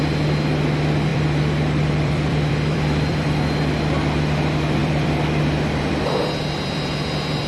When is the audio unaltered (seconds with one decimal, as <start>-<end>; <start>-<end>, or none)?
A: 0.0-1.1; 3.6-4.8